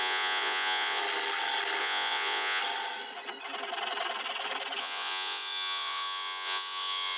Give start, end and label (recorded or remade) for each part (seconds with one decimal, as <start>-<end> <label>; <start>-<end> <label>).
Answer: 0.0-1.0 remade; 1.0-1.8 recorded; 1.8-2.6 remade; 2.6-4.8 recorded; 4.8-7.2 remade